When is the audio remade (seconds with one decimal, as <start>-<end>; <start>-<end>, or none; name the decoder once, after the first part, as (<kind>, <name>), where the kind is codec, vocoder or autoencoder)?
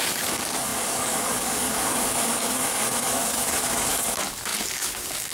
0.0-5.3 (codec, DAC)